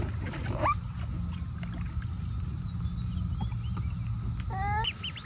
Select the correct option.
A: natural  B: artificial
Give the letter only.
A